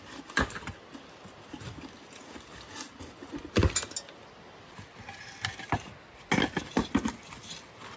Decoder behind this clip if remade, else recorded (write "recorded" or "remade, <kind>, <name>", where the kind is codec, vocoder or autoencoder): recorded